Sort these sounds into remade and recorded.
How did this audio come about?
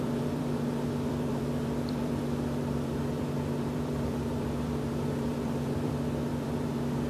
remade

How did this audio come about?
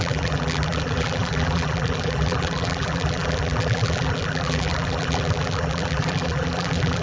remade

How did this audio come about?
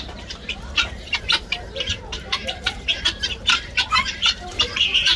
remade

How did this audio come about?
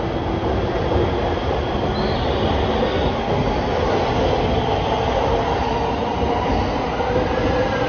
recorded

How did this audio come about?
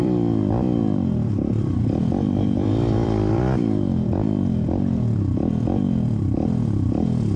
remade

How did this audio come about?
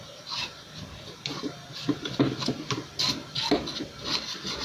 recorded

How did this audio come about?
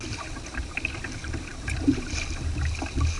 recorded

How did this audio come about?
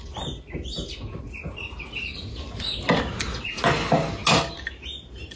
recorded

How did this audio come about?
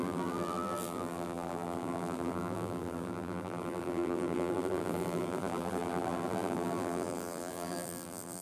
remade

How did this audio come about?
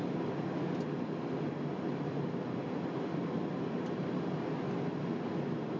recorded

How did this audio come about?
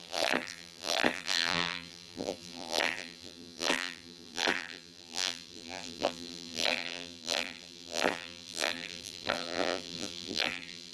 remade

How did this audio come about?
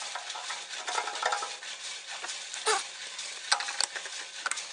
recorded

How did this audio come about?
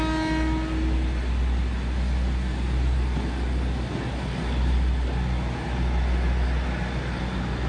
recorded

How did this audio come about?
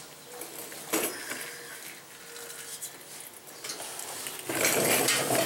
recorded